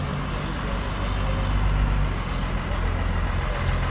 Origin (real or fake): real